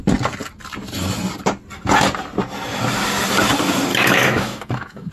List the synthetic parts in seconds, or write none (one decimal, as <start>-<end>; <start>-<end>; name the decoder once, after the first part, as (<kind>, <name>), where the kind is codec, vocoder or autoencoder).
3.9-5.1 (autoencoder, DAC-VAE)